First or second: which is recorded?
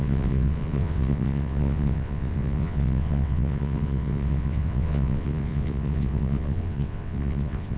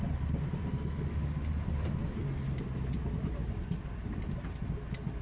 second